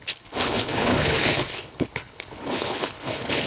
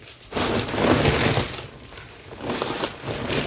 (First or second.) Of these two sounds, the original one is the second